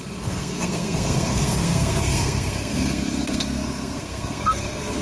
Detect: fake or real fake